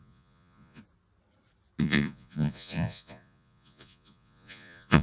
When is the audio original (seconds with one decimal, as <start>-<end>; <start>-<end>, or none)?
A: 0.8-1.8